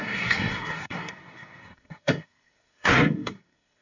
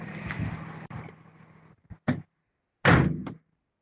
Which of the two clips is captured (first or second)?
second